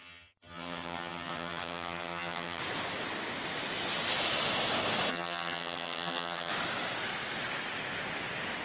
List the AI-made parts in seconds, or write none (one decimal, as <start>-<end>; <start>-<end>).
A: 0.0-2.6; 5.1-6.5